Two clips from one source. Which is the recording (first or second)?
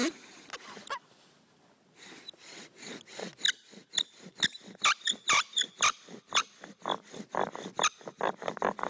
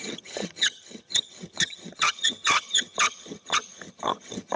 first